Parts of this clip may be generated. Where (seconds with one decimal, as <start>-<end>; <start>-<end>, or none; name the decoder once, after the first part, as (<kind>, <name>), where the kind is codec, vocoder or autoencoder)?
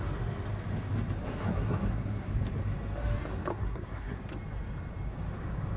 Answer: 1.2-2.3 (codec, SNAC); 3.5-4.2